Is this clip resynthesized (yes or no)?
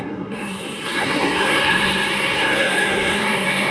yes